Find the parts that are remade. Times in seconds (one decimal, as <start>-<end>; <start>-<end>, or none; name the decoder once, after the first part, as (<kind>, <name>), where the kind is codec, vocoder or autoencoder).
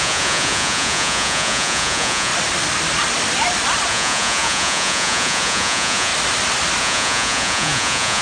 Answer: 0.0-2.3 (vocoder, Vocos); 3.9-6.1; 6.8-8.2